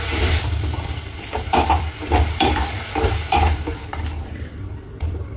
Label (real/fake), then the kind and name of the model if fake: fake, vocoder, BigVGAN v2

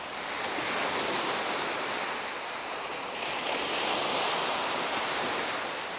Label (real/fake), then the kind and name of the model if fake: real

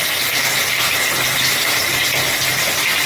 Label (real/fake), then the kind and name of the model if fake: real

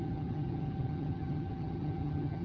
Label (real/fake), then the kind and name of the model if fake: fake, vocoder, HiFi-GAN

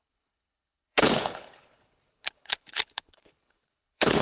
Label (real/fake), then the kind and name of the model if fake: fake, codec, HILCodec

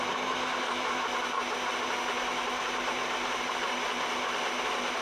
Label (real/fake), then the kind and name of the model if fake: real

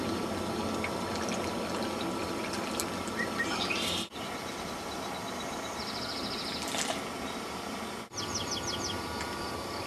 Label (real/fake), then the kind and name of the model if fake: real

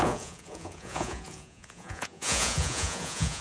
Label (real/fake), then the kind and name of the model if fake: fake, vocoder, Vocos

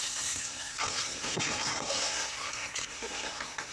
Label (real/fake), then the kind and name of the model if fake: fake, codec, SNAC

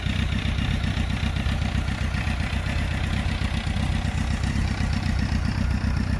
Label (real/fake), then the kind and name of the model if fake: real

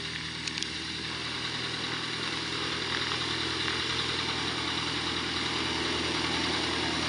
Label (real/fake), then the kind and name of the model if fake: real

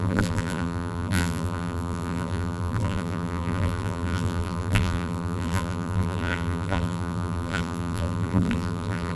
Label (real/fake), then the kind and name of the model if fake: fake, vocoder, BigVGAN v2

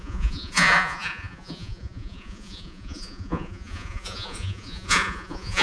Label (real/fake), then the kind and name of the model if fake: fake, vocoder, Vocos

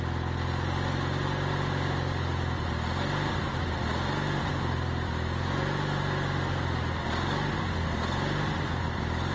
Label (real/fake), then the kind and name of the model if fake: real